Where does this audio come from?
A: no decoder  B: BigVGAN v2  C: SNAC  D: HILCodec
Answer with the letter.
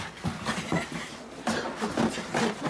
A